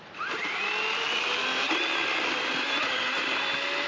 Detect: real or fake real